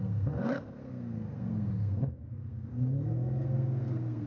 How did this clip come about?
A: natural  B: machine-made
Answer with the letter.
B